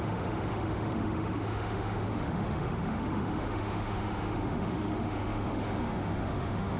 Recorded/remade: remade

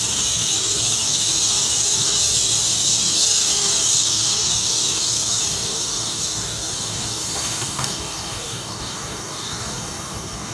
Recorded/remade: remade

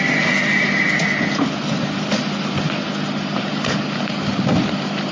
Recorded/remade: recorded